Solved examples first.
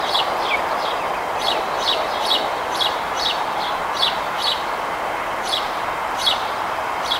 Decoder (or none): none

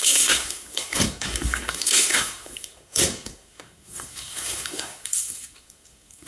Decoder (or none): codec, SNAC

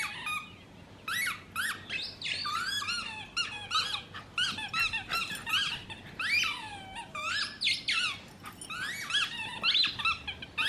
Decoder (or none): none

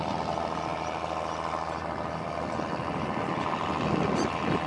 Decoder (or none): none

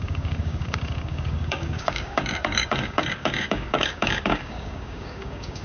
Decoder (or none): codec, DAC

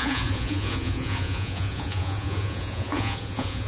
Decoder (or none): vocoder, Vocos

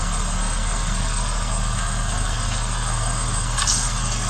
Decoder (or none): codec, SNAC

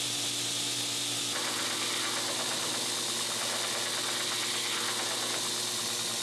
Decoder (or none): none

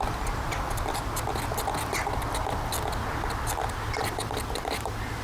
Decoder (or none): none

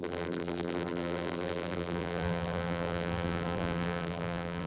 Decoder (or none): vocoder, BigVGAN v2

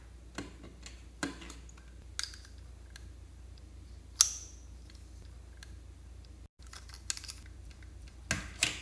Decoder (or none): none